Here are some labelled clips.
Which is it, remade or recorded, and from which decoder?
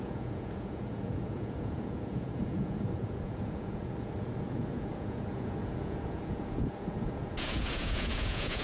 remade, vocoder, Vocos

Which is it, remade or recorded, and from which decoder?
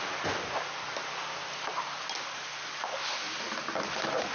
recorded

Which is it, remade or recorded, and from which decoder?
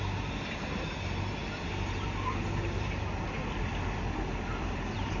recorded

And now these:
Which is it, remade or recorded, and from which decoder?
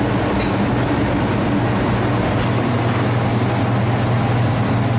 recorded